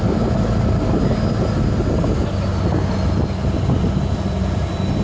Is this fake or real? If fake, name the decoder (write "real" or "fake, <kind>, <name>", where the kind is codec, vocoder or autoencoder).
real